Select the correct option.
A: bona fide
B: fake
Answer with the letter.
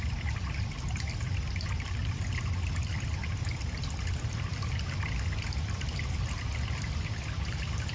A